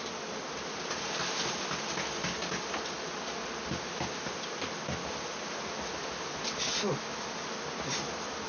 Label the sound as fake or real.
real